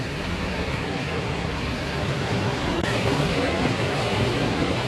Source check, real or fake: fake